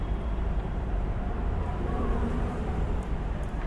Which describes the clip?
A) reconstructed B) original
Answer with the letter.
A